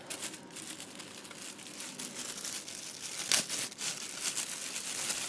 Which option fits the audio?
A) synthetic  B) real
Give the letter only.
B